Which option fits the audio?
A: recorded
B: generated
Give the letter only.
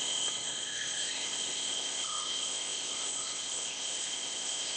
B